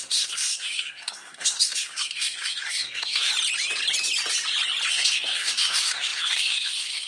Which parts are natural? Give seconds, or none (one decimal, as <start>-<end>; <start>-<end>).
3.3-4.9